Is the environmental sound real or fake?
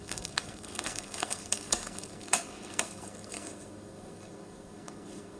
fake